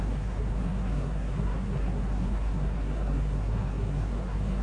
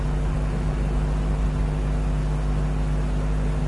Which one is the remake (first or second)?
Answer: first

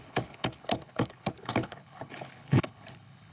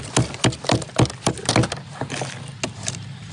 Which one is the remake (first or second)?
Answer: first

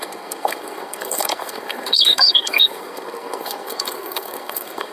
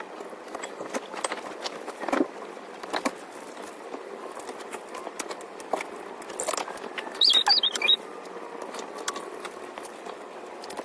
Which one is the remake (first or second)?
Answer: first